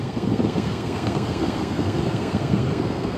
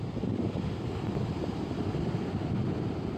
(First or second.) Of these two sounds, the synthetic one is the first